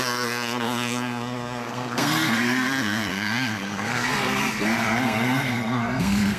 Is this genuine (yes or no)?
no